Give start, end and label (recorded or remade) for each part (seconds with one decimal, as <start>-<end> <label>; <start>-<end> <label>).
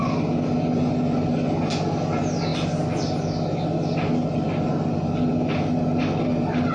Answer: 0.0-6.7 recorded